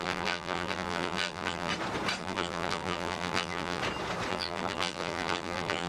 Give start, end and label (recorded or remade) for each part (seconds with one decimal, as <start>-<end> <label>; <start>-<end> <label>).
0.0-1.7 remade; 1.7-2.2 recorded; 2.2-3.8 remade; 3.8-4.3 recorded; 4.3-5.9 remade